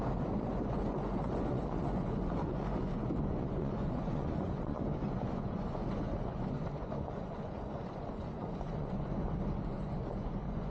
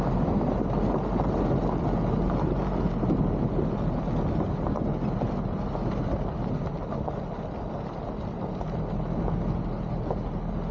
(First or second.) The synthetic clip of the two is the first